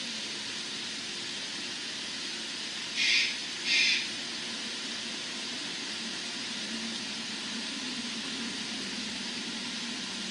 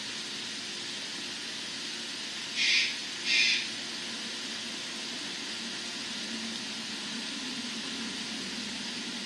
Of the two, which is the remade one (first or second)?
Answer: first